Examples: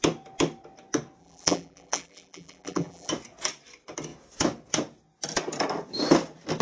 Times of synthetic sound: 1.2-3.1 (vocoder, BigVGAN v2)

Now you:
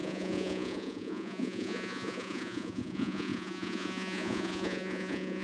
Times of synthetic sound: 0.0-5.4 (vocoder, Vocos)

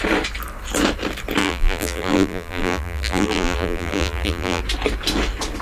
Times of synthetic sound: 1.4-4.6 (vocoder, BigVGAN v2)

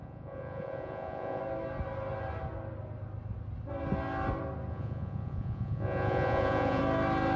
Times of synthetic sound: 0.0-1.4 (vocoder, Vocos); 4.7-6.8